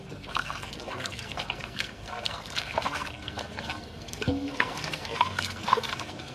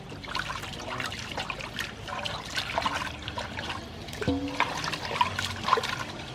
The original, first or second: second